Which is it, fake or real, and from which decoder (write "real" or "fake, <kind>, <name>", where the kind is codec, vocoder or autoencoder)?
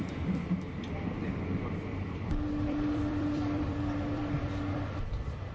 fake, vocoder, BigVGAN v2